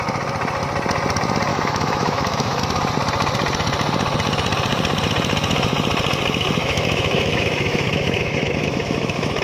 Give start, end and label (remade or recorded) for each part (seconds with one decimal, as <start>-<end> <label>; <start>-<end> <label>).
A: 0.0-1.5 recorded; 1.5-2.6 remade; 2.6-6.6 recorded; 6.6-9.4 remade